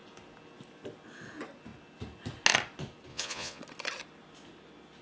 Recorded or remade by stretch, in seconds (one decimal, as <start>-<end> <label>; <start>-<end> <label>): 0.0-3.1 recorded; 3.1-3.6 remade; 3.6-5.0 recorded